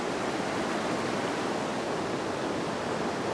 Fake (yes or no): no